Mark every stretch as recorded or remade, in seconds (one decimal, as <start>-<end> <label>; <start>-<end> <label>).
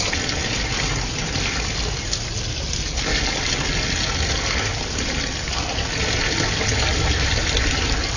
0.0-8.2 recorded